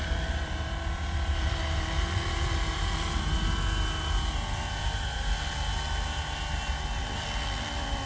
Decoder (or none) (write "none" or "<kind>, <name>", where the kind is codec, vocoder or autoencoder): none